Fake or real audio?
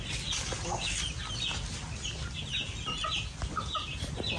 real